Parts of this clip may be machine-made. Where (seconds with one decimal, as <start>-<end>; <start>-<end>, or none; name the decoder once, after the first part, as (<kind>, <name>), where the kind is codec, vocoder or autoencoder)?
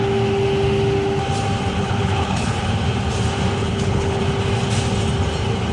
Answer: 1.8-2.7 (codec, HILCodec); 3.6-4.2